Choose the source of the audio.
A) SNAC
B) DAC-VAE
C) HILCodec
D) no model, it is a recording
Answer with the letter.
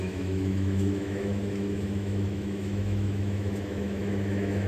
B